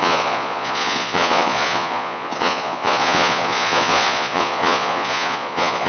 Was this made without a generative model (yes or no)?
no